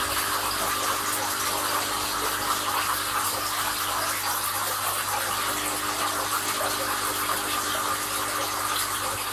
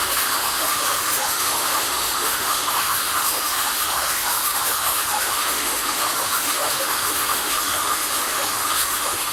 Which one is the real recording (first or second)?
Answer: first